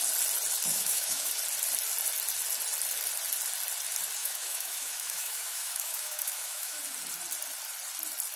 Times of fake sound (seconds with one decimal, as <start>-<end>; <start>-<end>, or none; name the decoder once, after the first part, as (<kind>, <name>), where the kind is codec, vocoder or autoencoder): 0.7-1.3 (autoencoder, DAC-VAE); 4.2-6.8